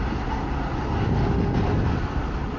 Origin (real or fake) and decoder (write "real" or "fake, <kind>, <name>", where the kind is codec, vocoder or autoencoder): real